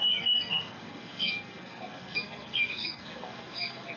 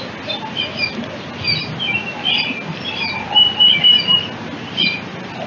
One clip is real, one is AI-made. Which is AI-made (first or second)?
first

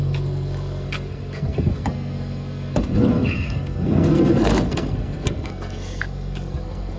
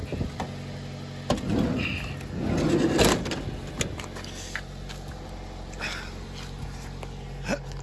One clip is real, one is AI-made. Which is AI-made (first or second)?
first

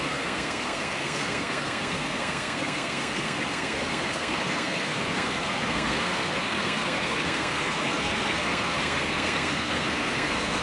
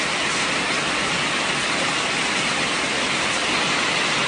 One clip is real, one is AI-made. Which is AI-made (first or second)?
first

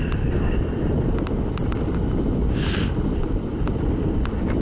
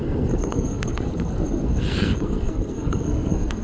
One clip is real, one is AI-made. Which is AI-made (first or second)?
second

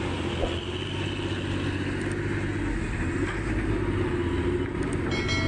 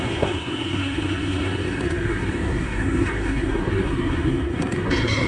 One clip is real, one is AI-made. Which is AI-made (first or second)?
second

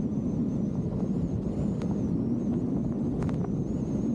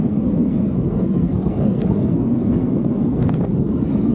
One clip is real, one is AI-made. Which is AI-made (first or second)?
second